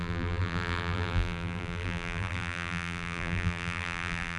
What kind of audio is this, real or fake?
fake